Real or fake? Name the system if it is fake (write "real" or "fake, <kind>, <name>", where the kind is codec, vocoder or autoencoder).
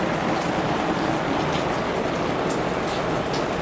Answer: real